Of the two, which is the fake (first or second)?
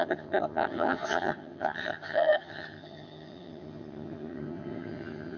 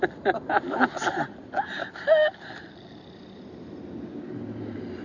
first